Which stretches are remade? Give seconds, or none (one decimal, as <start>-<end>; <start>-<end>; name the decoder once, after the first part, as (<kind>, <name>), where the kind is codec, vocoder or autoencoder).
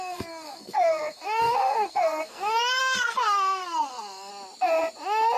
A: 0.0-4.3 (codec, SNAC)